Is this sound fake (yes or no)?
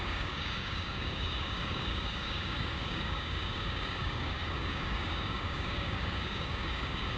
yes